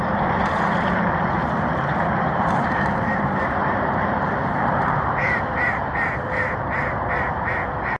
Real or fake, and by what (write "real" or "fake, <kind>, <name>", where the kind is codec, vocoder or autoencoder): fake, vocoder, BigVGAN v2